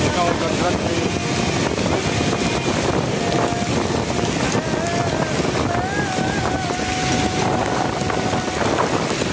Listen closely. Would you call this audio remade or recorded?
recorded